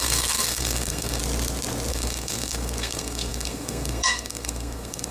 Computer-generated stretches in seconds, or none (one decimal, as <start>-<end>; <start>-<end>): 0.0-1.2; 1.9-5.1

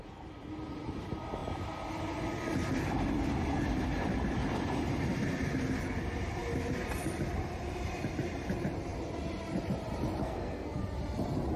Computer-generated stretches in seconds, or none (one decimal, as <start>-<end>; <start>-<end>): 10.2-10.8